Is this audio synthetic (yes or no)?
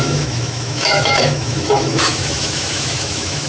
yes